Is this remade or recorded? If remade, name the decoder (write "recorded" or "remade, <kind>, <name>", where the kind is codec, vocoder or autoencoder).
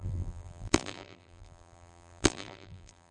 remade, vocoder, BigVGAN v2